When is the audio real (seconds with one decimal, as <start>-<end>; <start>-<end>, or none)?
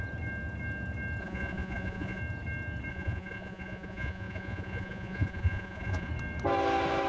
0.0-1.2; 2.2-2.9; 6.1-7.1